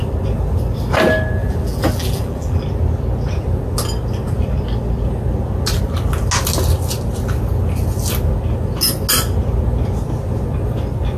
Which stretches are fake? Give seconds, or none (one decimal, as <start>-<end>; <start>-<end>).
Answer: 1.4-2.6